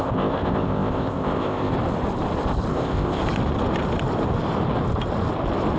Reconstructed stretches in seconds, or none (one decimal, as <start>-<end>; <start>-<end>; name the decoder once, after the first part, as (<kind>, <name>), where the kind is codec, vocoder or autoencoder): 0.0-1.7 (codec, ZipCodec); 2.7-3.2